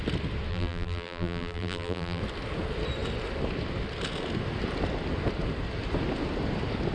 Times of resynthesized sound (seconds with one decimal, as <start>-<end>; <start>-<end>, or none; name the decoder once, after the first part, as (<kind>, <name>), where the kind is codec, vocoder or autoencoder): 0.5-2.2 (vocoder, BigVGAN v2)